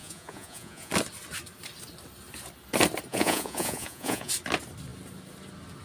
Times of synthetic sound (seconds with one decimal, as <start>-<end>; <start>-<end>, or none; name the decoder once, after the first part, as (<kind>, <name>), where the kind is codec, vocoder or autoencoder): 0.0-0.9 (vocoder, Vocos); 3.1-4.3